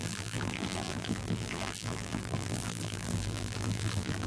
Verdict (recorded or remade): remade